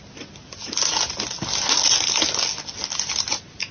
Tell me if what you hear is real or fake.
real